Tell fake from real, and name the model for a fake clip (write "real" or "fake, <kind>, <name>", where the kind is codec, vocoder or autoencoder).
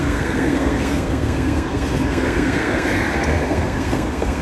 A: fake, codec, SNAC